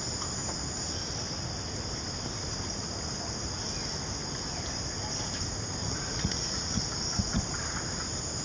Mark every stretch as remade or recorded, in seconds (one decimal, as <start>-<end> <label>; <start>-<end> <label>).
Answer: 0.0-5.8 recorded; 5.8-6.8 remade; 6.8-8.4 recorded